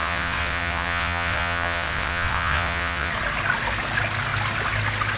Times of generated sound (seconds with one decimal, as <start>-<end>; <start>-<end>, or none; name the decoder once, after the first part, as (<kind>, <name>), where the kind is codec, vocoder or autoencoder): 0.0-3.1 (vocoder, WaveNeXt)